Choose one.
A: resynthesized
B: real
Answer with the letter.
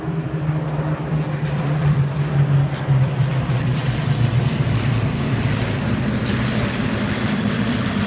A